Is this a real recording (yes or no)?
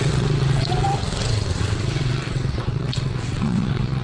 no